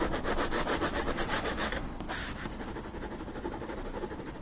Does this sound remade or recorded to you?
recorded